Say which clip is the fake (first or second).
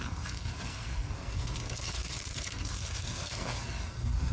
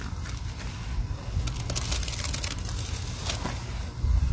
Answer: first